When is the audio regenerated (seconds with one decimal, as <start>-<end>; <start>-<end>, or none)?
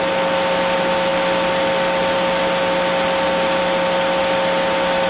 none